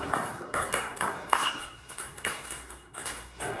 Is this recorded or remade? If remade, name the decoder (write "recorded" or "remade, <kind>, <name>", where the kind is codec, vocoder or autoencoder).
remade, codec, SNAC